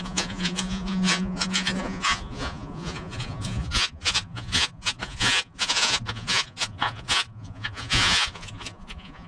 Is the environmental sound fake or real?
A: fake